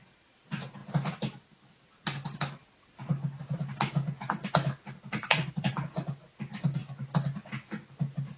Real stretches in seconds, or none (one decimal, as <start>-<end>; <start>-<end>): 0.0-5.2; 5.7-8.4